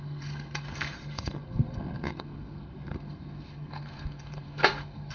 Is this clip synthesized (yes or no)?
yes